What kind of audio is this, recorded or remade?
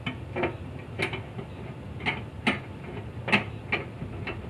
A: recorded